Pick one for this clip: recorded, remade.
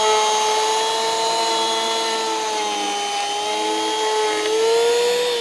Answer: recorded